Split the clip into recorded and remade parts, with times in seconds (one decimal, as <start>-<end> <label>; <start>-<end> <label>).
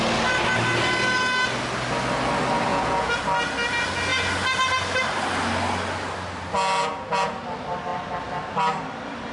0.0-2.7 recorded; 2.7-3.2 remade; 3.2-9.3 recorded